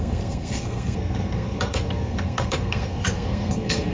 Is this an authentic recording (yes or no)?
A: no